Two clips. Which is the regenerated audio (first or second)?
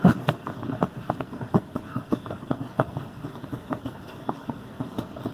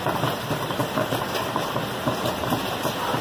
first